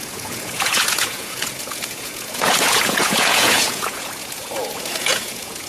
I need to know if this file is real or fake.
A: fake